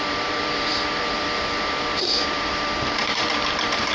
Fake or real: fake